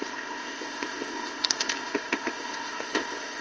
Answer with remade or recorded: remade